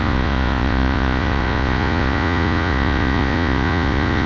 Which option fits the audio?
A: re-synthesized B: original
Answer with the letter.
A